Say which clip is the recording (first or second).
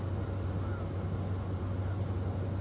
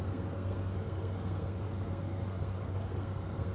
first